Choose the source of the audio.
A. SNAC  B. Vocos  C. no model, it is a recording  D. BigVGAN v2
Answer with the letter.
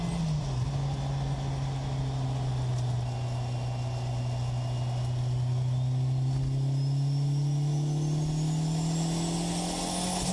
C